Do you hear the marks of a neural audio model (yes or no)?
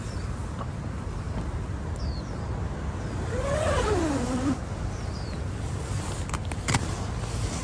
no